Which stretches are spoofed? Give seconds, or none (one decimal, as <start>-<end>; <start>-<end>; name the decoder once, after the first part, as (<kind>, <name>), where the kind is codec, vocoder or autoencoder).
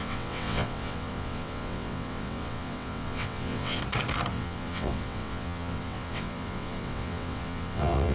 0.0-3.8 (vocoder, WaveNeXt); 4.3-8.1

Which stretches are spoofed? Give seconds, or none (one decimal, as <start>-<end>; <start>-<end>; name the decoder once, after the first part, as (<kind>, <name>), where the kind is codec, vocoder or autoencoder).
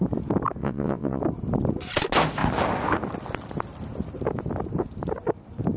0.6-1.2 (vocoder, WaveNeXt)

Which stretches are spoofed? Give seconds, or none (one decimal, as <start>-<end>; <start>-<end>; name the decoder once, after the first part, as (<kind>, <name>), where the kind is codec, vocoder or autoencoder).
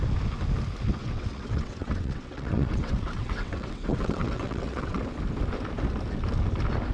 1.0-5.0 (vocoder, WaveNeXt)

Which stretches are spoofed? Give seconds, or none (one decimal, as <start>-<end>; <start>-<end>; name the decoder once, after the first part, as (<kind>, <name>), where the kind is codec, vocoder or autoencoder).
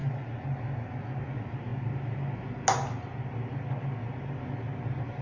none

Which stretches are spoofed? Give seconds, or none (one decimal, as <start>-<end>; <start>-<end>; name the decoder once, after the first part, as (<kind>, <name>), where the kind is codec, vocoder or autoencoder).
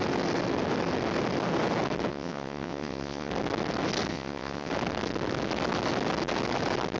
2.1-3.3 (vocoder, WaveNeXt); 4.1-4.7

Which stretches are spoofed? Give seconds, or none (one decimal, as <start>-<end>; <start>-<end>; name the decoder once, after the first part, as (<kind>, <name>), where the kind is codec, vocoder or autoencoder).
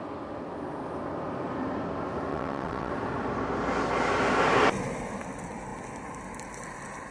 2.3-2.9 (vocoder, WaveNeXt)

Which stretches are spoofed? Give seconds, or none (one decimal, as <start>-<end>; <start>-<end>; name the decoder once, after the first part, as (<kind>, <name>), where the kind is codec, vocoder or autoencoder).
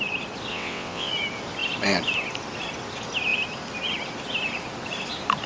0.5-1.1 (vocoder, WaveNeXt)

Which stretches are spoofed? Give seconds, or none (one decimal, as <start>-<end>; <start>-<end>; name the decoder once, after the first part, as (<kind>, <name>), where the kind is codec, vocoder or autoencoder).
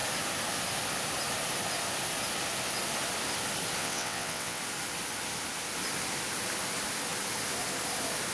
3.8-4.6 (vocoder, WaveNeXt)